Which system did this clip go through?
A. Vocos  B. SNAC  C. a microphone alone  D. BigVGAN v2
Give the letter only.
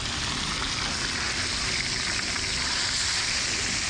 C